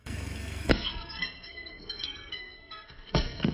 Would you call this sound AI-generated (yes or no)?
yes